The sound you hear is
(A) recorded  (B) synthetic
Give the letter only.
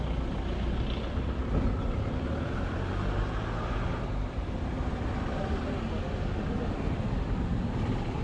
A